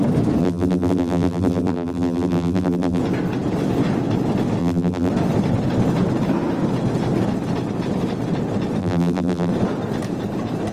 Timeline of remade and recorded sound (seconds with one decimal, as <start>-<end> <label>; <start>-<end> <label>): 0.0-0.4 recorded; 0.4-3.0 remade; 3.0-4.6 recorded; 4.6-5.1 remade; 5.1-8.8 recorded; 8.8-9.5 remade; 9.5-10.7 recorded